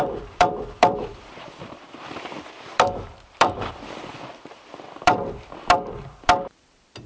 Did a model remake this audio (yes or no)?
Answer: yes